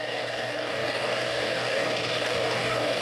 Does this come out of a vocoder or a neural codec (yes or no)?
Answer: yes